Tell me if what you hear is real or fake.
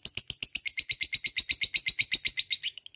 real